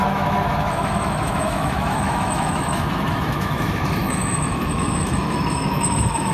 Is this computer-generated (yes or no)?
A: yes